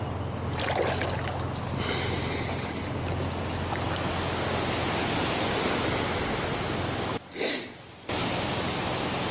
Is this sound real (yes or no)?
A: yes